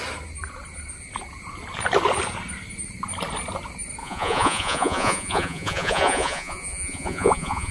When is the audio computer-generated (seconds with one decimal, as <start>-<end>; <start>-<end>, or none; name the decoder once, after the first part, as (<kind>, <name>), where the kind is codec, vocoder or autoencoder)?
4.0-7.7 (vocoder, Vocos)